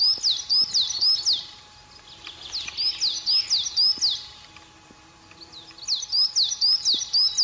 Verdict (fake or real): real